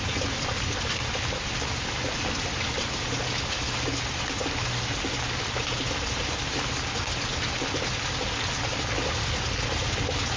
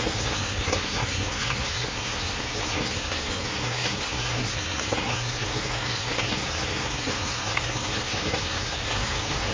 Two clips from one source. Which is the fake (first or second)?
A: second